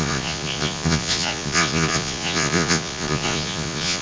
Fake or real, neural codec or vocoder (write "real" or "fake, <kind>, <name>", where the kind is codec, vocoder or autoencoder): fake, vocoder, Vocos